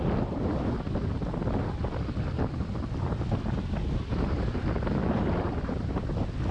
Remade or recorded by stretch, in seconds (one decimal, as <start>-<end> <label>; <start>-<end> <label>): 0.0-6.5 recorded